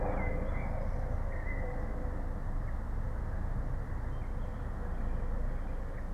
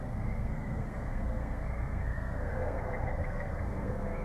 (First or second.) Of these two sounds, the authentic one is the first